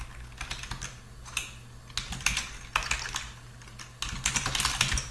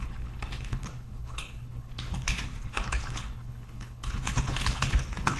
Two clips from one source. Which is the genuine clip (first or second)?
first